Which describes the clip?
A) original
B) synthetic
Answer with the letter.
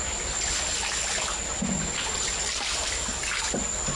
A